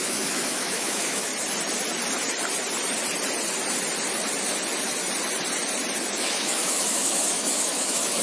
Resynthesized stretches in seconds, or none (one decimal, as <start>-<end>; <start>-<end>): 0.0-1.3; 6.2-8.2